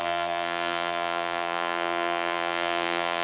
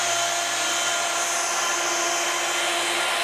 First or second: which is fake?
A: first